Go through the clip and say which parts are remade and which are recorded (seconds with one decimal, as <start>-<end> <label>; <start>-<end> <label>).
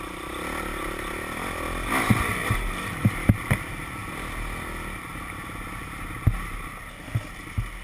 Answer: 0.0-2.3 recorded; 2.3-3.4 remade; 3.4-7.8 recorded